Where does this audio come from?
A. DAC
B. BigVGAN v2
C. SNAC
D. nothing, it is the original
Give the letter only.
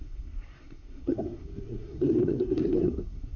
C